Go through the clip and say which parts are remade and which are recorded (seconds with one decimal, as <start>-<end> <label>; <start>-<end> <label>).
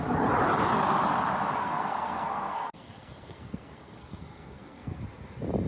0.0-1.6 recorded; 1.6-5.0 remade; 5.0-5.7 recorded